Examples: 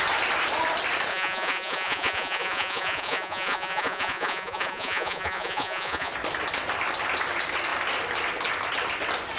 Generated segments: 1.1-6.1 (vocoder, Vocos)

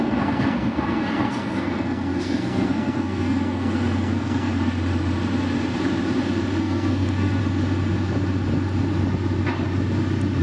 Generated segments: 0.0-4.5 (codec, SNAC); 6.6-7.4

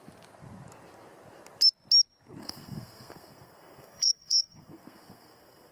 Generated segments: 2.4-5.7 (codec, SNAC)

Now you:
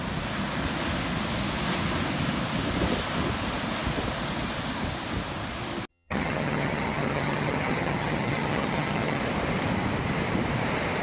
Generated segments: 5.9-9.2 (vocoder, HiFi-GAN)